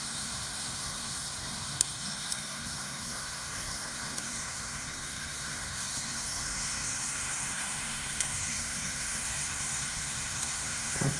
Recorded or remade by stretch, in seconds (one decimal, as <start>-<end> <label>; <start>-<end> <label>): 0.0-11.2 remade